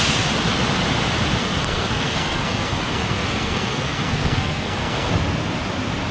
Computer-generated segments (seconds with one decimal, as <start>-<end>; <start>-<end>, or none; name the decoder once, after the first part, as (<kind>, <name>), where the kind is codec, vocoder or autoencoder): 1.4-5.1 (codec, SNAC)